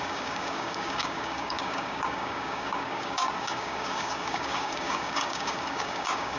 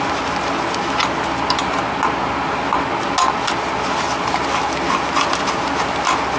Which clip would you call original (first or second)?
second